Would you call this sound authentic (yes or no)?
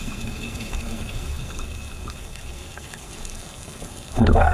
no